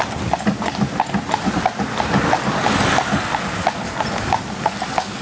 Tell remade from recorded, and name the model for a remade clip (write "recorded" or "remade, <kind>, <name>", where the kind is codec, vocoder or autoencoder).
recorded